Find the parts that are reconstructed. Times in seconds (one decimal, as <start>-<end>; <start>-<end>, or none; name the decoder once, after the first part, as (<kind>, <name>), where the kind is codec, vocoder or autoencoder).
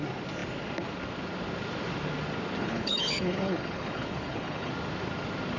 2.6-4.7 (codec, HILCodec)